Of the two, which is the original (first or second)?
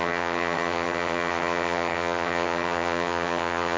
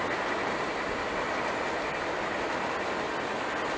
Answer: second